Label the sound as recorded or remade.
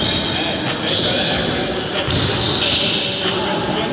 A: recorded